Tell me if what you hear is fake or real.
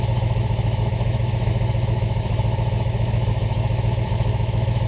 fake